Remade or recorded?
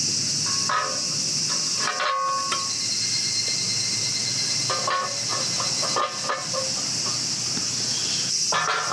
recorded